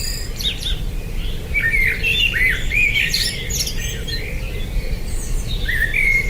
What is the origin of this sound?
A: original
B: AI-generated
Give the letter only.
B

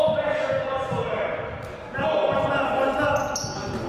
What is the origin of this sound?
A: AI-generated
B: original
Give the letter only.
B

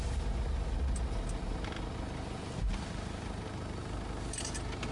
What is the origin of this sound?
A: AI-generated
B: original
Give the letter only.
B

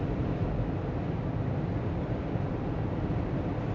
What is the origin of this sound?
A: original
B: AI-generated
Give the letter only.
B